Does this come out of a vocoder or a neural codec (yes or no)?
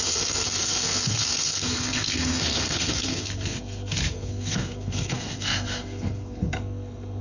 yes